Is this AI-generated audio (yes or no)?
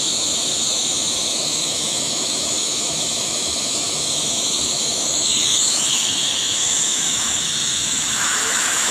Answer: yes